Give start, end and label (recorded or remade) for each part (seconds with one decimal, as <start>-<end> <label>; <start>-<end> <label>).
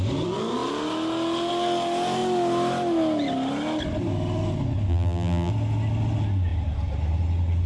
0.0-4.9 recorded; 4.9-5.5 remade; 5.5-7.7 recorded